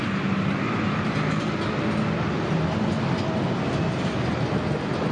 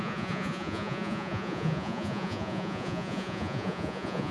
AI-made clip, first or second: second